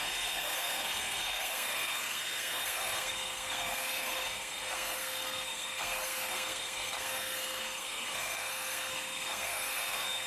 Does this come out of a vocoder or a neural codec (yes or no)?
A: yes